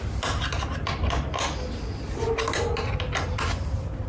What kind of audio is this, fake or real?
real